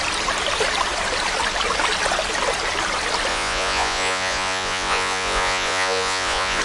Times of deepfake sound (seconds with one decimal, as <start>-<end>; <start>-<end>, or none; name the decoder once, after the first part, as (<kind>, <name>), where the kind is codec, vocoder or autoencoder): 3.3-6.6 (vocoder, Vocos)